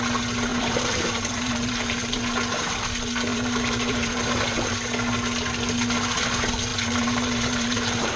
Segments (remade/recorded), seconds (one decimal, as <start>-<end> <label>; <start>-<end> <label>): 0.0-0.5 recorded; 0.5-2.2 remade; 2.2-3.3 recorded; 3.3-4.7 remade; 4.7-6.7 recorded; 6.7-8.2 remade